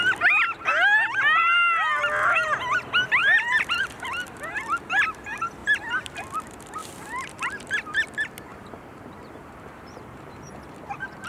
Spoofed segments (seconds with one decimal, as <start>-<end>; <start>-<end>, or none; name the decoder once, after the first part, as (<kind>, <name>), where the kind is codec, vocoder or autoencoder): 3.2-3.8 (vocoder, BigVGAN v2); 6.8-7.4; 8.5-10.5